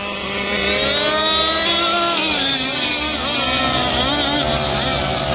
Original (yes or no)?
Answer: yes